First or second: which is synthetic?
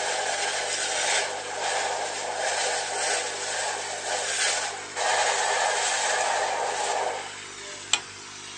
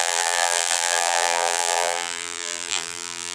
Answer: second